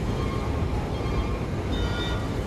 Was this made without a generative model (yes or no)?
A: no